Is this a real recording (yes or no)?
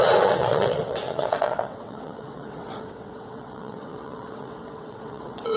no